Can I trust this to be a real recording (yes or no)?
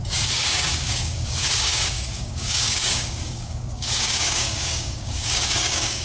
no